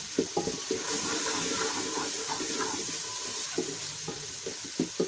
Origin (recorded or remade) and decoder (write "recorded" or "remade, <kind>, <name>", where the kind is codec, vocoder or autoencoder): recorded